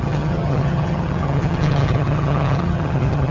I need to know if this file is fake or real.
fake